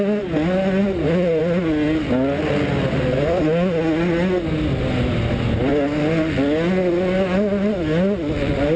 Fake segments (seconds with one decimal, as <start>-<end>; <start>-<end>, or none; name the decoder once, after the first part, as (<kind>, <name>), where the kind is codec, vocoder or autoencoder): none